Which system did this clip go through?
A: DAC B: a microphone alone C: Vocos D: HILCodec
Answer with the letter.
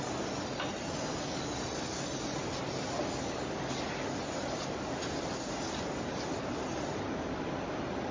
B